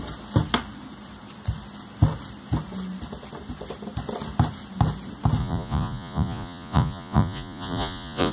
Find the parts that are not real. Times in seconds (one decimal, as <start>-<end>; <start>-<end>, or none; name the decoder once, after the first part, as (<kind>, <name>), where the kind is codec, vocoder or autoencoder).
5.4-8.3 (vocoder, Vocos)